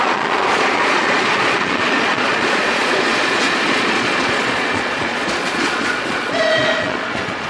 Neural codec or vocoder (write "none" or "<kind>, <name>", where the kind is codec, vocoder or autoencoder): vocoder, Vocos